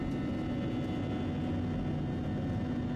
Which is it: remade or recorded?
recorded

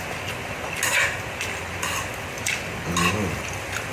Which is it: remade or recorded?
recorded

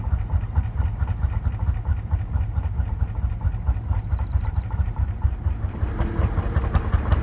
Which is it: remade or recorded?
recorded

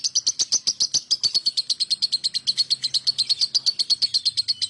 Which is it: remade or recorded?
recorded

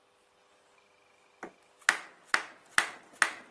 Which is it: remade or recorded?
recorded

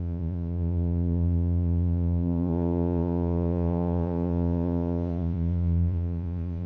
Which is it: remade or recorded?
remade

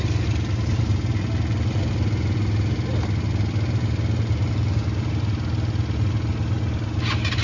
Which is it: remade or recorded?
recorded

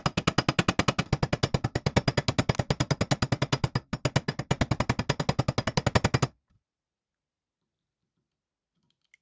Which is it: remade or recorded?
recorded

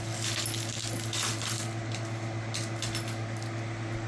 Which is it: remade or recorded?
recorded